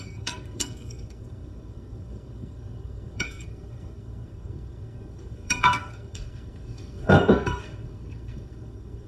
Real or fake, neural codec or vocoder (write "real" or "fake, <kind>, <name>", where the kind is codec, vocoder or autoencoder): fake, codec, SNAC